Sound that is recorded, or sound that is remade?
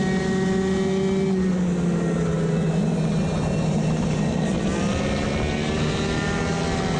recorded